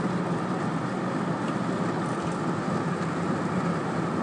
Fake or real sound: real